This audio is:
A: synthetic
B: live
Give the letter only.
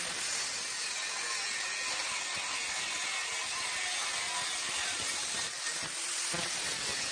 B